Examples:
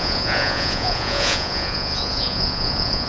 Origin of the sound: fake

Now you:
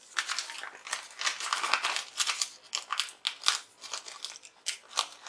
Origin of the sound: real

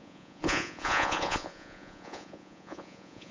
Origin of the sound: fake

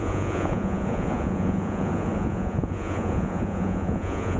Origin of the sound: fake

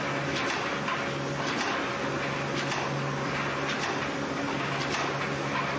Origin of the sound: real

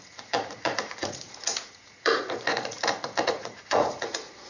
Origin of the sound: fake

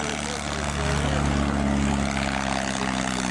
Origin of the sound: real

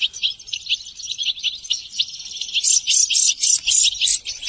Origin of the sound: real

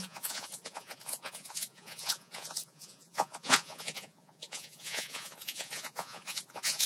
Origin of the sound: fake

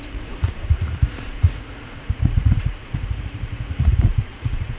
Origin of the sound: fake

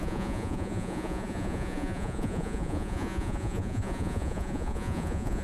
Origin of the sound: fake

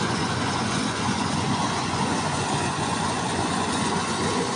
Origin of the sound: fake